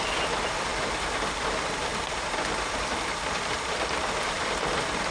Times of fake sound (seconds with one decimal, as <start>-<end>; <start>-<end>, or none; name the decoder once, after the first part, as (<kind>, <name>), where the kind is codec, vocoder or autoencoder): 0.0-5.1 (vocoder, BigVGAN v2)